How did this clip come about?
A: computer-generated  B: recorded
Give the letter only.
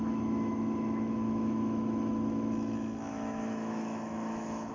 A